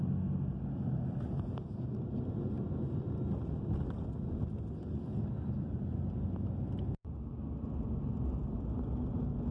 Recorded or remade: recorded